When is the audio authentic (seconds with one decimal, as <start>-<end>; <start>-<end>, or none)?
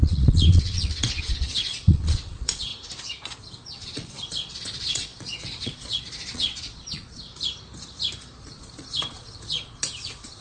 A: 2.7-3.4; 7.3-8.4